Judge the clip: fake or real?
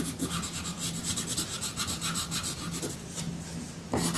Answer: real